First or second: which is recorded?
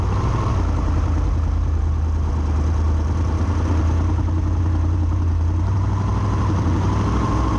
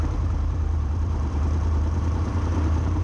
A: first